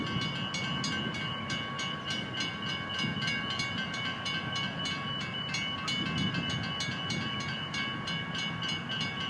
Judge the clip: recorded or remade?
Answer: recorded